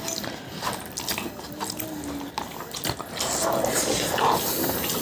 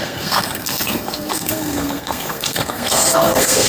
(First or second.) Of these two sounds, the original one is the first